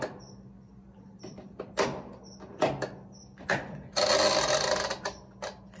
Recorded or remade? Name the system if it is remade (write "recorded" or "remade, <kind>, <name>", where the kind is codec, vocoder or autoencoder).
recorded